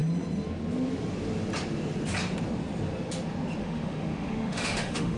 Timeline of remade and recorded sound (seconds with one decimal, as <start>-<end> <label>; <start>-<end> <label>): 0.0-3.6 recorded; 3.6-5.2 remade